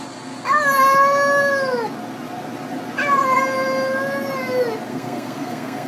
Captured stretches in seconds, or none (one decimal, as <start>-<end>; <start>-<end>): 0.0-4.9